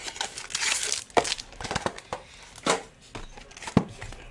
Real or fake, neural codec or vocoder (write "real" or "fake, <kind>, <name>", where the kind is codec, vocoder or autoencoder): real